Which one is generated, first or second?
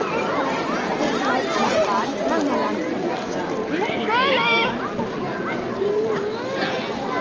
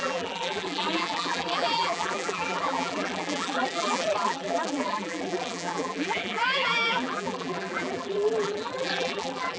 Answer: second